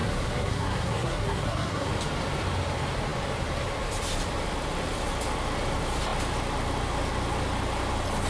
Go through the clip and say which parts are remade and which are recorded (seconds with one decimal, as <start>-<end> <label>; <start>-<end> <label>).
0.0-1.9 remade; 1.9-8.3 recorded